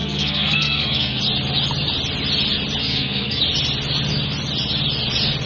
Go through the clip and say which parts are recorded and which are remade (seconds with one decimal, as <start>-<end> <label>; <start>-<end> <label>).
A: 0.0-1.2 remade; 1.2-2.8 recorded; 2.8-3.4 remade; 3.4-5.5 recorded